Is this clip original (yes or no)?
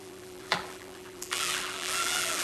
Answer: no